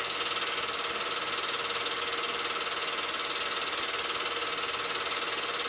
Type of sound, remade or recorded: recorded